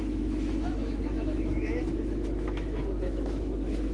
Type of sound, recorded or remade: remade